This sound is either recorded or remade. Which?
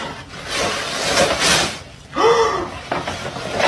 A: recorded